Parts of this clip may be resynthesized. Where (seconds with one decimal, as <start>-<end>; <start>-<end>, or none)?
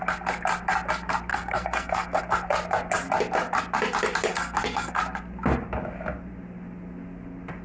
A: 1.3-2.2; 4.3-5.0